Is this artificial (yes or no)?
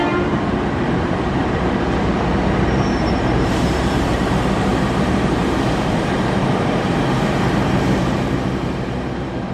yes